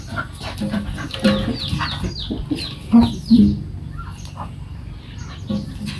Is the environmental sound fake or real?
real